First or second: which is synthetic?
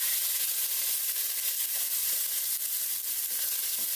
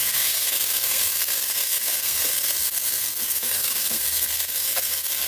second